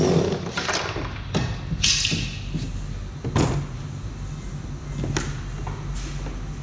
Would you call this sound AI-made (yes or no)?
no